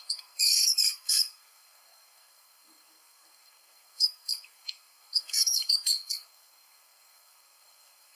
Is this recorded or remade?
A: remade